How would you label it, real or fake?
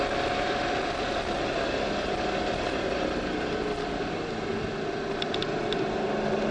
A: real